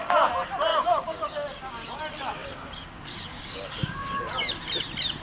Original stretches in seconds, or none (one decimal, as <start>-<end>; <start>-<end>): 0.0-0.7; 2.0-2.4; 4.2-5.2